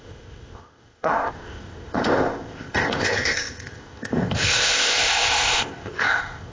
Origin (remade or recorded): remade